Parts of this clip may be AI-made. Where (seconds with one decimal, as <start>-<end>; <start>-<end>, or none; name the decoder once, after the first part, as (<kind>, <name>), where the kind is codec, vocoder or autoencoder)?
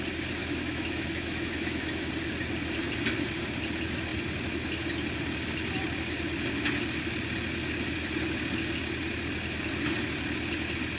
0.4-2.1 (autoencoder, DAC-VAE)